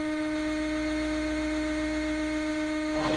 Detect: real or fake fake